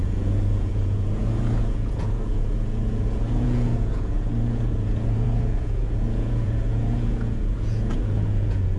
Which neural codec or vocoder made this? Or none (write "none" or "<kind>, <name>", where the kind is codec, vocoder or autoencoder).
vocoder, Vocos